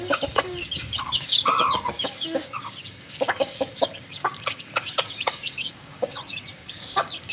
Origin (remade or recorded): remade